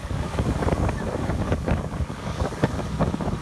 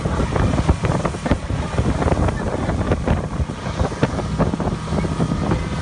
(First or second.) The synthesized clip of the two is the first